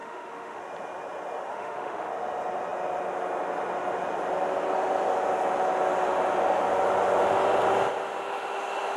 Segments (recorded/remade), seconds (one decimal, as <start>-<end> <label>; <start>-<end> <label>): 0.0-0.6 remade; 0.6-1.5 recorded; 1.5-2.1 remade; 2.1-9.0 recorded